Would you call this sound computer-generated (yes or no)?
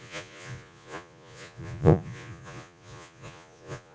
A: yes